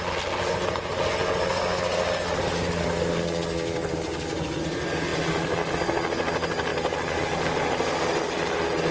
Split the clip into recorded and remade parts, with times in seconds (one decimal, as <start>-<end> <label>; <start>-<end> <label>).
0.0-2.8 recorded; 2.8-4.6 remade; 4.6-8.9 recorded